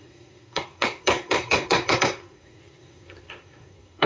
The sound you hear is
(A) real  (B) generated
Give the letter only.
B